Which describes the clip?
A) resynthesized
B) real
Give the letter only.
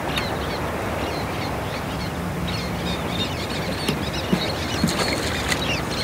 B